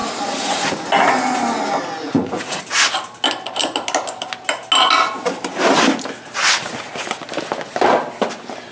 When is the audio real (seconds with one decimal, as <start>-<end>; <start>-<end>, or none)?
0.7-2.0; 2.6-8.7